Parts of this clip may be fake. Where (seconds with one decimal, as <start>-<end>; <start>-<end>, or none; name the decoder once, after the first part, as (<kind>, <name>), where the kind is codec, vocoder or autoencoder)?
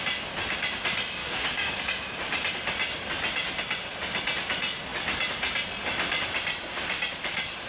1.2-1.8 (codec, DAC)